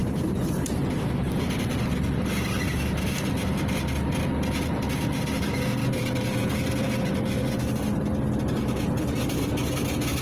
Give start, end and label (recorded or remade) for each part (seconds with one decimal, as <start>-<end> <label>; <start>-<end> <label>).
0.0-1.4 remade; 1.4-5.8 recorded; 5.8-7.5 remade; 7.5-10.2 recorded